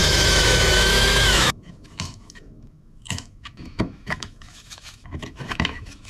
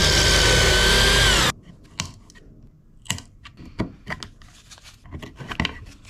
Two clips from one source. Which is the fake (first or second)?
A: first